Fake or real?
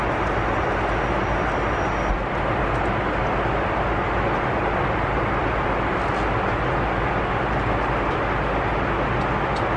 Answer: real